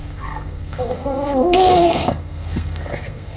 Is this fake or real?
fake